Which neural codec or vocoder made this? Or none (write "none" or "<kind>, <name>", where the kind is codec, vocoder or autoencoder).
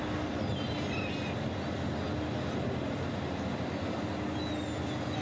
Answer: none